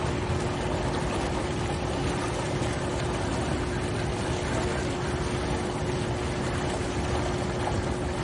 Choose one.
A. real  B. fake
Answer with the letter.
A